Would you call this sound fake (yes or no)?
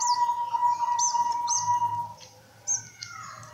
no